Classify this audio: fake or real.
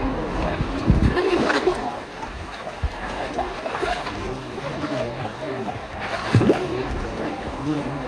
fake